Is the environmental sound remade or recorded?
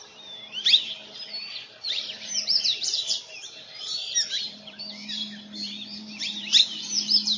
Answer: remade